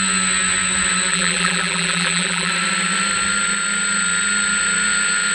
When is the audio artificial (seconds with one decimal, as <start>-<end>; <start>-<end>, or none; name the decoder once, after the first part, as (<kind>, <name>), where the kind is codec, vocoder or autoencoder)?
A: 1.1-2.5 (vocoder, BigVGAN v2)